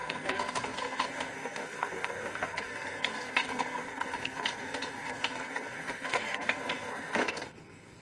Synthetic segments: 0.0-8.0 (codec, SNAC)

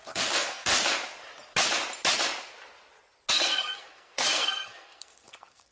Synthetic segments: 0.0-0.7 (codec, SNAC); 3.3-5.7